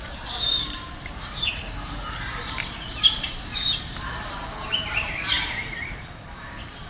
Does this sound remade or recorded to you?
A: remade